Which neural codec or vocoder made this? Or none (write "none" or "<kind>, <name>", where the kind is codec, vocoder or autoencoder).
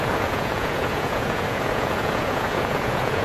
vocoder, Vocos